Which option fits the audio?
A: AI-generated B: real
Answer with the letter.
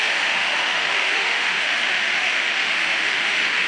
A